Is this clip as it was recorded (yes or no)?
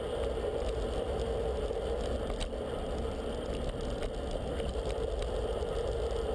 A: yes